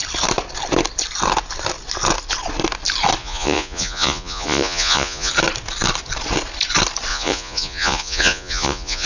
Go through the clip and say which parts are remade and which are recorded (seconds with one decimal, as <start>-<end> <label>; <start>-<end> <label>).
0.0-3.2 recorded; 3.2-5.3 remade; 5.3-7.1 recorded; 7.1-9.1 remade